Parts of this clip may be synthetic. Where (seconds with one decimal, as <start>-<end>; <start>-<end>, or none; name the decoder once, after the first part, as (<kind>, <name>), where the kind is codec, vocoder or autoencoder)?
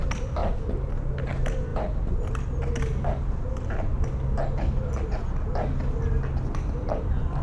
1.7-2.6 (vocoder, BigVGAN v2)